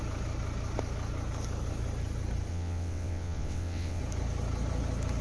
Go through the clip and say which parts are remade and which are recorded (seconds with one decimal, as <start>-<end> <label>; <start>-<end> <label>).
0.0-2.5 recorded; 2.5-4.0 remade; 4.0-5.2 recorded